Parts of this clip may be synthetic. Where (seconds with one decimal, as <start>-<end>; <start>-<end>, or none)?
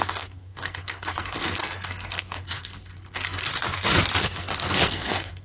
0.0-3.5; 4.2-5.4